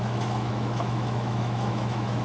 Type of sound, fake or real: fake